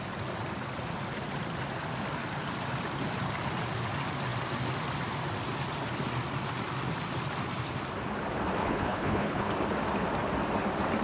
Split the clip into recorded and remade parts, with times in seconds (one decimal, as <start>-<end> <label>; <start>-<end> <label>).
0.0-8.6 recorded; 8.6-9.5 remade; 9.5-11.0 recorded